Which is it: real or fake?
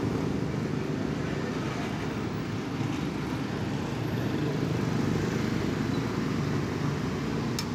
real